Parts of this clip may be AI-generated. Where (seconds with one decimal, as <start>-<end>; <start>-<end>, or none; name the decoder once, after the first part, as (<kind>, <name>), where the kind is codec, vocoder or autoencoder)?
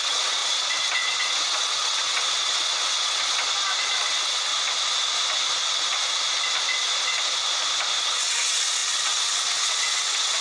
0.0-3.4 (vocoder, WaveNeXt); 3.9-4.5; 8.0-10.4